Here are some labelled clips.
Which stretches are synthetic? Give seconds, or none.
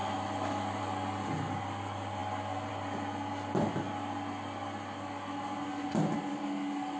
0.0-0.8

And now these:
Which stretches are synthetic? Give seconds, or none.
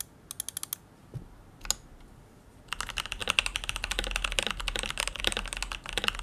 none